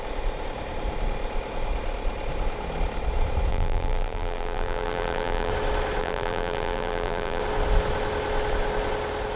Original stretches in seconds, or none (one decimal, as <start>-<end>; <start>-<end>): 0.0-3.5; 5.5-6.0; 7.4-9.4